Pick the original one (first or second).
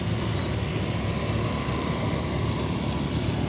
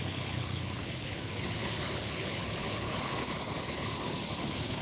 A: first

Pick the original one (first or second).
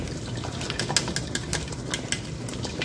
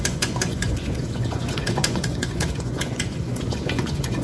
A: first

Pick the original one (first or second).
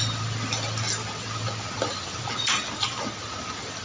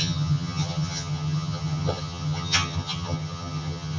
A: first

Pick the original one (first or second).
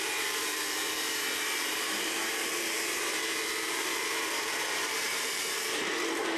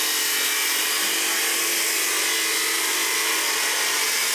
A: second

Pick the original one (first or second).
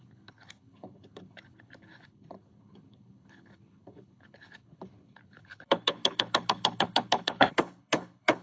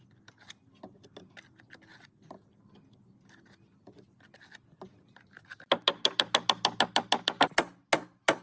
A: second